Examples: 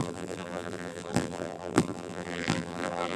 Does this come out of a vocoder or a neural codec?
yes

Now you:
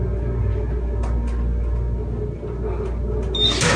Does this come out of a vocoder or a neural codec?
no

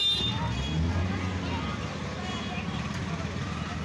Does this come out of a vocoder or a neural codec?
no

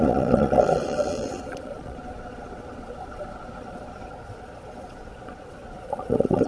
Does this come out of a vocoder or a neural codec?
yes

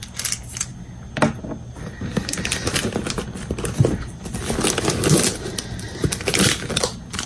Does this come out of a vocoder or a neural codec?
no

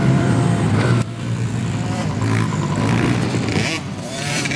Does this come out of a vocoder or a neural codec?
yes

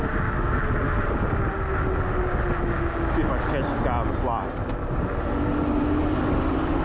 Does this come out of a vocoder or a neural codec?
no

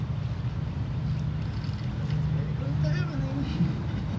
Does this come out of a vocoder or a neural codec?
no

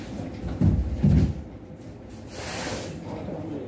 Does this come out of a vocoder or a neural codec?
no